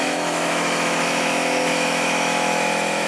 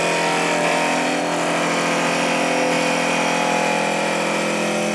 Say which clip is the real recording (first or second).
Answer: second